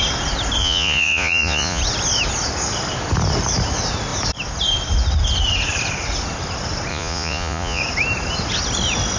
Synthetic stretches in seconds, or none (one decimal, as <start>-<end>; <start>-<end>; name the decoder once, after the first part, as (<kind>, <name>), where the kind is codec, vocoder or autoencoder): 0.6-1.8 (vocoder, Vocos); 6.9-7.8